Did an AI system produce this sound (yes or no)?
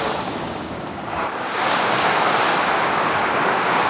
yes